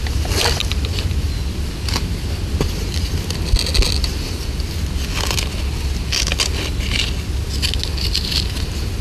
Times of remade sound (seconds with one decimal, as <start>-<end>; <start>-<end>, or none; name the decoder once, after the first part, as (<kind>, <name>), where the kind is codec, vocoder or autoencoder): none